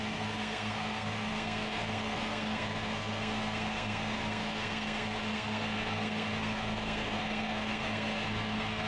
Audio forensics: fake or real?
fake